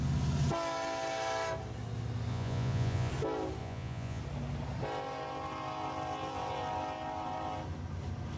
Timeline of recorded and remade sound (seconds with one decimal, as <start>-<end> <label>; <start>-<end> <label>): 0.0-2.3 recorded; 2.3-3.1 remade; 3.1-3.6 recorded; 3.6-4.2 remade; 4.2-8.4 recorded

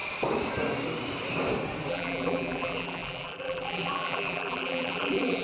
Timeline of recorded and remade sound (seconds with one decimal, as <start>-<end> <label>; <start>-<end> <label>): 0.0-1.9 recorded; 1.9-5.4 remade

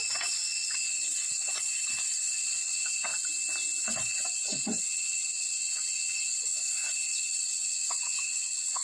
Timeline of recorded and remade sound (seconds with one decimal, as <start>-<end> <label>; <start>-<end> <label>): 0.0-3.1 remade; 3.1-3.8 recorded; 3.8-8.8 remade

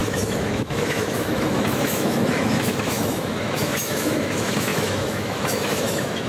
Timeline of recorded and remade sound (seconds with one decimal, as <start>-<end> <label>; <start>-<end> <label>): 0.0-6.3 remade

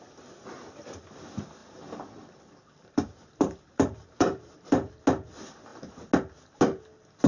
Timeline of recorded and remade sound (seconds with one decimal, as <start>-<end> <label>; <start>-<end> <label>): 0.0-1.6 recorded; 1.6-4.9 remade; 4.9-7.3 recorded

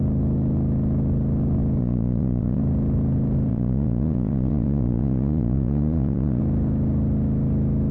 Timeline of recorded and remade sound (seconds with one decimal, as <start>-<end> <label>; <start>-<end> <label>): 0.0-1.8 recorded; 1.8-2.6 remade; 2.6-3.5 recorded; 3.5-6.4 remade; 6.4-7.9 recorded

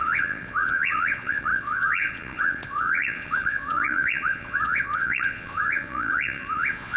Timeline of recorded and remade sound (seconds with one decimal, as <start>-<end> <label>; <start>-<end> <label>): 0.0-7.0 remade

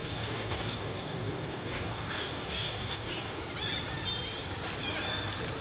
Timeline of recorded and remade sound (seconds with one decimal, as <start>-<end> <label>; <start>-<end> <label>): 0.0-3.4 remade; 3.4-5.6 recorded